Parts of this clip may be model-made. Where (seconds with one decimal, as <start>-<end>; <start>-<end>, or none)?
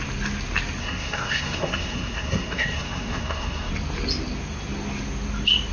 0.8-3.7